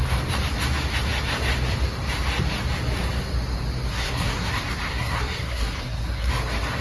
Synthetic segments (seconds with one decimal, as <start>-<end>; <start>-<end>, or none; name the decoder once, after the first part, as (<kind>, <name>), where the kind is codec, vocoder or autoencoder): 3.9-4.5 (codec, SNAC); 4.9-6.3